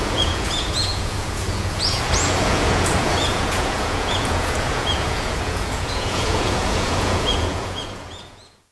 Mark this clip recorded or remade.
remade